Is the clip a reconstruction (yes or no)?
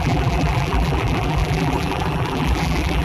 yes